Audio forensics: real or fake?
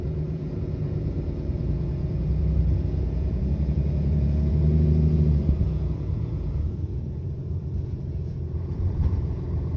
fake